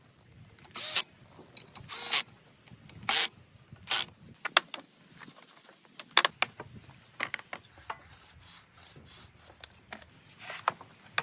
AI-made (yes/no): no